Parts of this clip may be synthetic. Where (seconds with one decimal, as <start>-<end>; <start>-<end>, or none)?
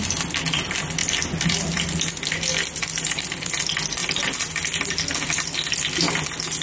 none